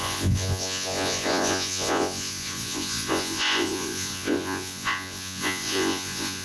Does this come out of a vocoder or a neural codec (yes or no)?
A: yes